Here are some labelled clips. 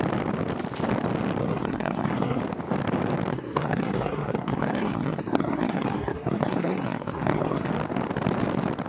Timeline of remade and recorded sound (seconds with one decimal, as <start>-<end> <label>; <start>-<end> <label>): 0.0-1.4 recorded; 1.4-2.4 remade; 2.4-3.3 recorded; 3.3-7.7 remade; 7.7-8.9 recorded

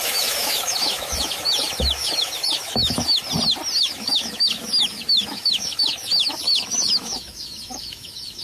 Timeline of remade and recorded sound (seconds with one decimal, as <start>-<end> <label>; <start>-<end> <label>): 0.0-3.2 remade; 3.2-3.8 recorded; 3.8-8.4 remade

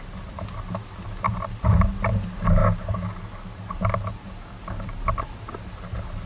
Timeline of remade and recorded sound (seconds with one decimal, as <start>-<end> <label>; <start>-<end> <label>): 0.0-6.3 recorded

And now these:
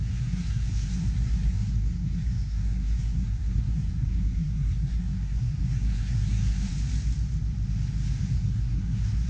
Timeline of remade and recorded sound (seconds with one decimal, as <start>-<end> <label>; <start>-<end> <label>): 0.0-6.7 remade; 6.7-8.2 recorded; 8.2-9.3 remade